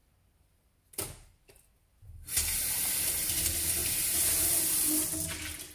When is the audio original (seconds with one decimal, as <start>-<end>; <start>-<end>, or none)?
0.0-5.7